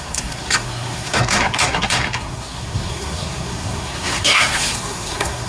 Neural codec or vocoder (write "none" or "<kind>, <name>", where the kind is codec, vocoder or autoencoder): codec, SNAC